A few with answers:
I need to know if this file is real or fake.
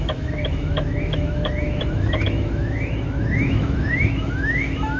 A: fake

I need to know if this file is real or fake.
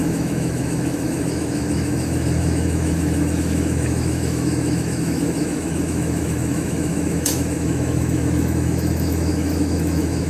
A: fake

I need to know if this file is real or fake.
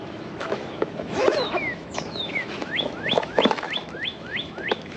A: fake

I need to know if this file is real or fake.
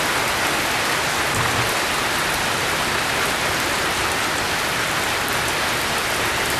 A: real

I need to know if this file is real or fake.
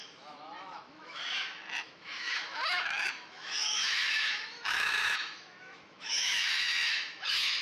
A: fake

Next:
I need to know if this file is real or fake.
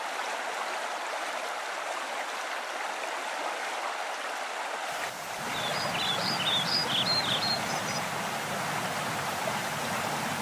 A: real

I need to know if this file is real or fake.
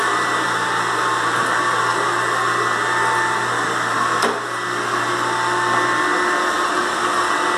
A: real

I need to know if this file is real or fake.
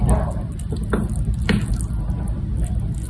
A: real